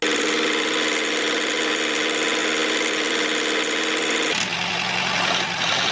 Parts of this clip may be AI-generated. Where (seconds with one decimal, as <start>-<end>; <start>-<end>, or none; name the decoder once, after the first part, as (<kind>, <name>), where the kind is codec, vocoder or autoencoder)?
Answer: none

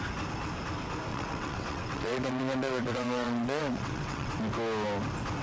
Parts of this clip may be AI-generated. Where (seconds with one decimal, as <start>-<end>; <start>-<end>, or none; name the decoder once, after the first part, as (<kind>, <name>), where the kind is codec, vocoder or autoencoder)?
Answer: 1.1-4.3 (vocoder, WaveNeXt)

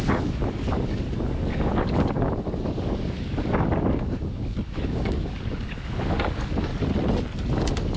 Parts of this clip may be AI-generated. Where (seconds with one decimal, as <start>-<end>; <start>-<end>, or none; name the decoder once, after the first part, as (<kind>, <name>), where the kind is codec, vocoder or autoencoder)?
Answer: 0.0-6.7 (codec, DAC); 7.5-8.0

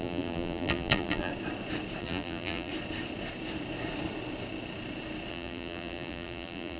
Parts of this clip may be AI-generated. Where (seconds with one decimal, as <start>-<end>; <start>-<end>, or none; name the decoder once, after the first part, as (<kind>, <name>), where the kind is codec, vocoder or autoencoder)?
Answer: 0.0-1.3 (vocoder, BigVGAN v2); 2.0-2.7; 5.3-6.8

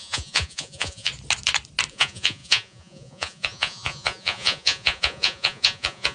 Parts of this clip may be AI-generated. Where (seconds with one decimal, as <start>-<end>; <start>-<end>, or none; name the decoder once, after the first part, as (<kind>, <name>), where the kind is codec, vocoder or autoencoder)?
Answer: 0.0-1.1 (vocoder, Vocos); 1.9-6.1